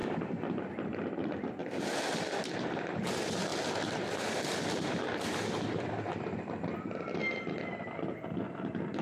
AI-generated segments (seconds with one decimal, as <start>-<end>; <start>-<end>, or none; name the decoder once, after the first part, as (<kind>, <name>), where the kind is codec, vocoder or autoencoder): 0.0-3.5 (vocoder, BigVGAN v2); 4.7-7.2; 8.5-9.0